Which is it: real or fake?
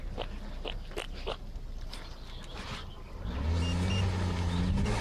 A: real